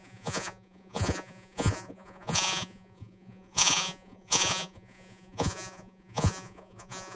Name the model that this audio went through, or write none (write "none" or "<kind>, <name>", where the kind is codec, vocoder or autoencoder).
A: vocoder, Vocos